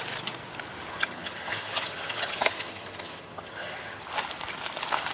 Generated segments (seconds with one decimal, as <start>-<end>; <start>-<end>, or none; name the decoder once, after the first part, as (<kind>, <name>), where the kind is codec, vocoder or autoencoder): 0.9-4.0 (vocoder, HiFi-GAN)